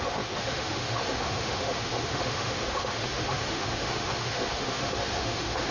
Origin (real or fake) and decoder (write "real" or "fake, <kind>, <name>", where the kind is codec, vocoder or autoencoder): fake, autoencoder, DAC-VAE